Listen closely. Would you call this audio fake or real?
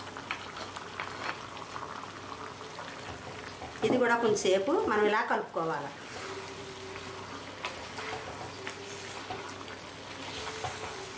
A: real